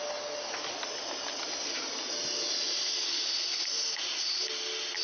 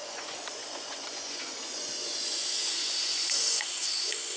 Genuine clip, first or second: first